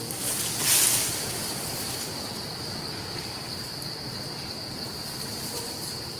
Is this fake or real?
real